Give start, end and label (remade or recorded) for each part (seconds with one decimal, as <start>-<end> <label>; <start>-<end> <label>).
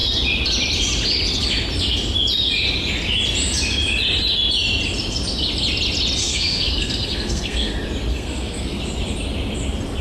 0.0-6.2 recorded; 6.2-7.7 remade; 7.7-8.1 recorded; 8.1-8.8 remade; 8.8-10.0 recorded